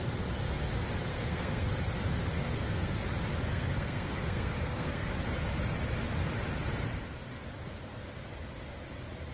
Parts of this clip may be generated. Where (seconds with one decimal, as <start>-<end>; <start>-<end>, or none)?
1.1-1.7; 2.4-3.0; 3.5-5.1